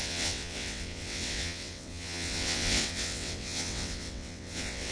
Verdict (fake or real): fake